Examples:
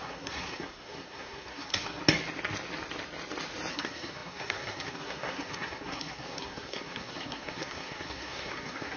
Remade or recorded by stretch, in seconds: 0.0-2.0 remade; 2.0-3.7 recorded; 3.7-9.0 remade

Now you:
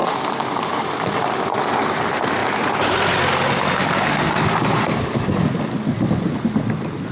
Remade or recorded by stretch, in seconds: 0.0-1.0 remade; 1.0-2.4 recorded; 2.4-5.0 remade; 5.0-7.1 recorded

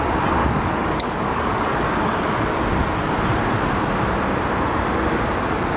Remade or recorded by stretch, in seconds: 0.0-0.4 recorded; 0.4-2.2 remade; 2.2-5.8 recorded

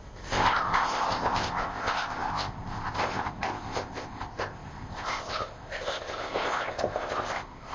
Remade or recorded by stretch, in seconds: 0.0-7.7 remade

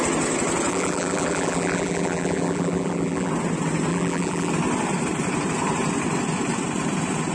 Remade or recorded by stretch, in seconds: 0.0-0.7 recorded; 0.7-3.3 remade; 3.3-3.9 recorded; 3.9-4.5 remade; 4.5-7.3 recorded

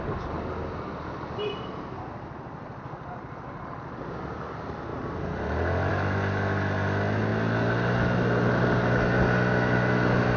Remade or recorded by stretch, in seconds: 0.0-10.4 recorded